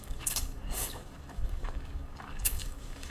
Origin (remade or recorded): remade